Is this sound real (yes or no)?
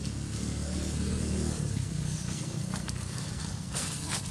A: no